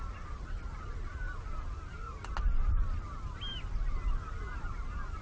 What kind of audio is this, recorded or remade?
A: recorded